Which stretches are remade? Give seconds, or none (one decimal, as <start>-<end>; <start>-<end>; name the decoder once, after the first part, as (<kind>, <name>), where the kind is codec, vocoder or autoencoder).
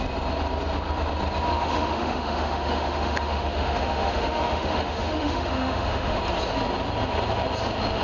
1.5-6.2 (autoencoder, DAC-VAE)